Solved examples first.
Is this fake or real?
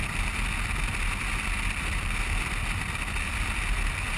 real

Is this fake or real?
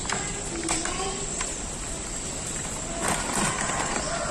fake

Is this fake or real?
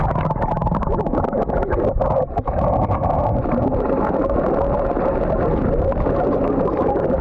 real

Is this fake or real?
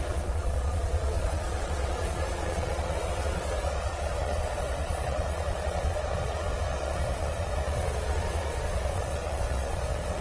fake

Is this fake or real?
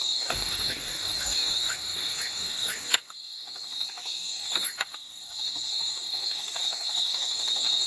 fake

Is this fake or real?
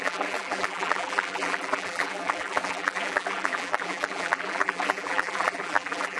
fake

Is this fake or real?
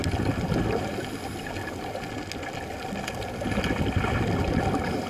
real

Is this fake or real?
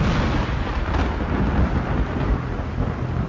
real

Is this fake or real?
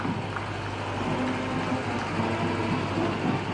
real